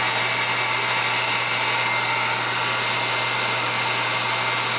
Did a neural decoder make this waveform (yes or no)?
no